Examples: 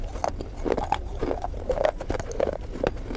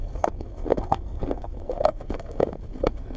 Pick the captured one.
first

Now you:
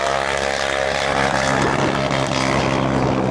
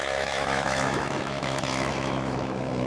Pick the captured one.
first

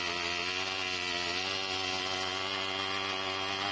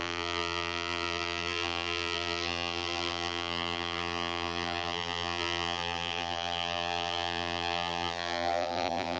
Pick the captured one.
first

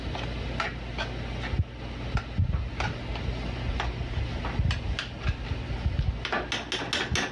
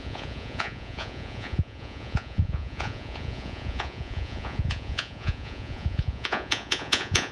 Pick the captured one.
first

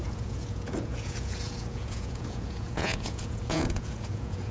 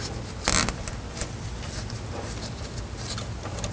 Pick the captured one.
second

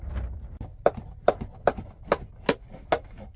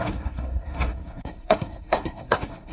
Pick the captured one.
first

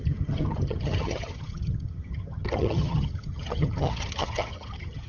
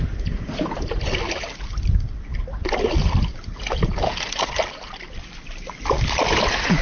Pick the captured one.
second